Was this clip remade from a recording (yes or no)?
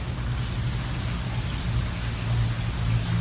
no